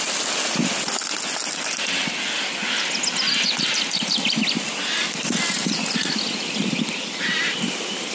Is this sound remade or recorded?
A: recorded